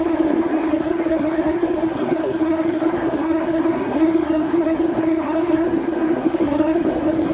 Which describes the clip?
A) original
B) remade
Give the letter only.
B